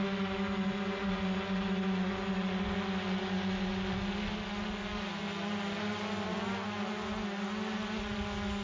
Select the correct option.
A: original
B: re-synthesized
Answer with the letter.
A